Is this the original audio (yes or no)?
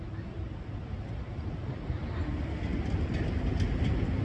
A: yes